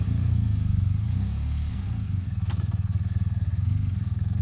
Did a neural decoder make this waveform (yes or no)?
yes